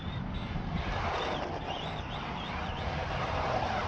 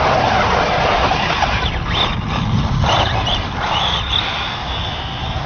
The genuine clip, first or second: first